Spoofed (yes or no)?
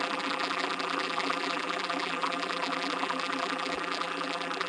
yes